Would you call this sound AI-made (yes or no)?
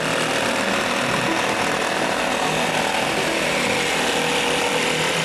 no